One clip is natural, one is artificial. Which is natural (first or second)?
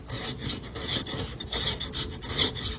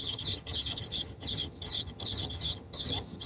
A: first